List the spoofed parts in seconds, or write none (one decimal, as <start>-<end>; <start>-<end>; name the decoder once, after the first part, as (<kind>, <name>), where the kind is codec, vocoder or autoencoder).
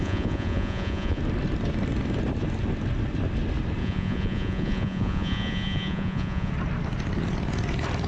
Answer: 0.0-1.2 (vocoder, Vocos); 3.8-6.5